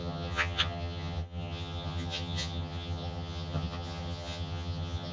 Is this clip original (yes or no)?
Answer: no